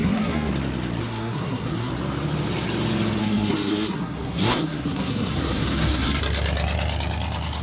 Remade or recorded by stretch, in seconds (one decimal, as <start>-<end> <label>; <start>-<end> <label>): 0.0-0.5 remade; 0.5-1.0 recorded; 1.0-1.9 remade; 1.9-3.2 recorded; 3.2-6.2 remade; 6.2-7.6 recorded